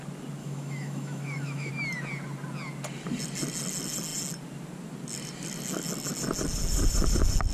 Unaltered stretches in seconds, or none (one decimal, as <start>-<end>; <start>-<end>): 0.0-0.4; 1.7-7.5